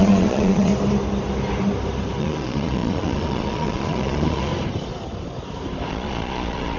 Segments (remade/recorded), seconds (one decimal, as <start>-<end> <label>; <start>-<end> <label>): 0.0-0.7 remade; 0.7-2.2 recorded; 2.2-4.5 remade; 4.5-5.9 recorded; 5.9-6.8 remade